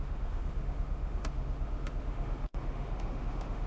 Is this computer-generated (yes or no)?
yes